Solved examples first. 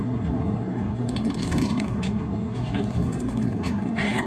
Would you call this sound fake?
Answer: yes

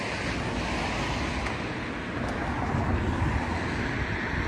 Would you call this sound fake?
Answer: no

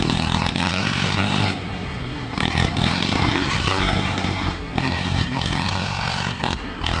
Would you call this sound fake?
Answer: yes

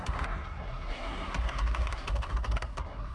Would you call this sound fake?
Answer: yes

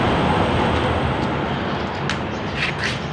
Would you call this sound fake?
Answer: no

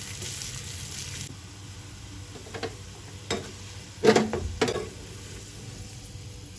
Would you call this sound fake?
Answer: no